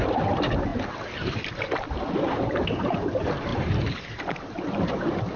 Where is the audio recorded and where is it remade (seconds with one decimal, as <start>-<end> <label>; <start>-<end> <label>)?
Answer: 0.0-3.5 recorded; 3.5-4.7 remade; 4.7-5.4 recorded